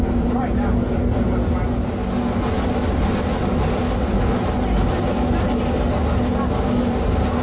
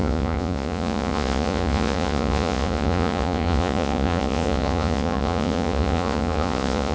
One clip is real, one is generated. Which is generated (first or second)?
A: second